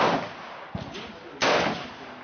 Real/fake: real